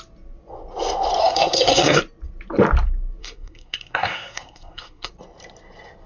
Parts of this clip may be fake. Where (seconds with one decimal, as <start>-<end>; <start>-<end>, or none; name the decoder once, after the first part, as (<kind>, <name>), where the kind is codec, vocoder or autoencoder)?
1.2-2.0 (codec, SNAC); 3.2-5.1